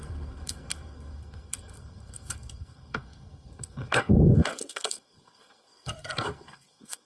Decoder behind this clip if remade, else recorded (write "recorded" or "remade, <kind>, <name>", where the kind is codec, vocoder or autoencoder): remade, codec, SNAC